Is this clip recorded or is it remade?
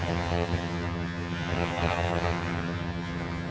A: remade